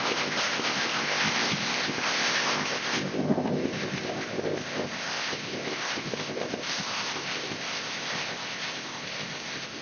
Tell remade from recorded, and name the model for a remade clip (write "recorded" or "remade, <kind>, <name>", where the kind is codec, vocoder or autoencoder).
remade, codec, ZipCodec